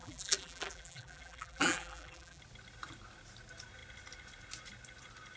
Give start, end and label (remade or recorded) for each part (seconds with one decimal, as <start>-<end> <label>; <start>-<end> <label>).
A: 0.0-2.4 remade; 2.4-5.4 recorded